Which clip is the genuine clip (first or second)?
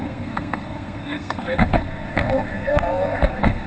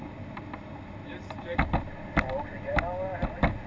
second